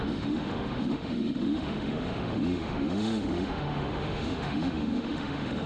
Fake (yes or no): yes